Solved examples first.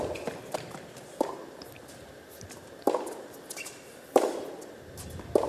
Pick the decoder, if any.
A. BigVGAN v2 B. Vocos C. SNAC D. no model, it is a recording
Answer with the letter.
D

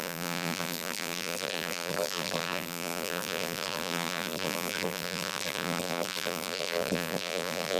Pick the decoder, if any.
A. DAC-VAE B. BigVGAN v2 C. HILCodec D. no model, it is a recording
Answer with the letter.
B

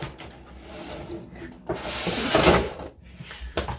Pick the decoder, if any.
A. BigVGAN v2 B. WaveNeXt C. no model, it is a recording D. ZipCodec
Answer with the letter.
A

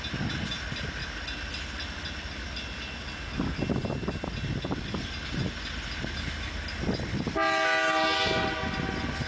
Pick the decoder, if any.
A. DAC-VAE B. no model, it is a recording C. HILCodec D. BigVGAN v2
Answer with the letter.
B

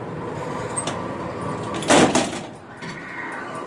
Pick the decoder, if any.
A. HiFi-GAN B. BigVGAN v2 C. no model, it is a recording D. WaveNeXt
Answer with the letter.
B